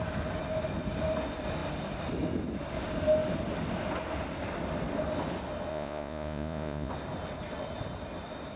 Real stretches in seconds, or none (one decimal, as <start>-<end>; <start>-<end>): 0.0-5.7; 6.9-8.6

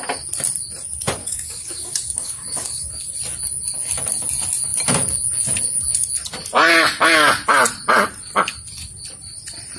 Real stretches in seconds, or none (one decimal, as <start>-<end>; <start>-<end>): 0.0-1.2; 3.1-9.8

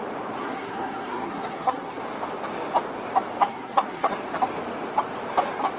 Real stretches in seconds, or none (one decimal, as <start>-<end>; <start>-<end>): 0.0-0.4; 2.0-3.5; 4.1-5.8

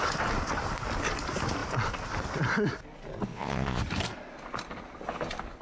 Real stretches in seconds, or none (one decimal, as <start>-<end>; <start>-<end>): 0.0-3.3; 3.8-5.6

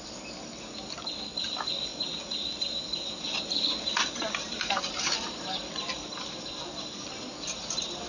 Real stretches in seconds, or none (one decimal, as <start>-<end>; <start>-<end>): 0.0-8.1